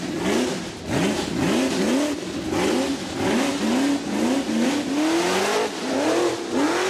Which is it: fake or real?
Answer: real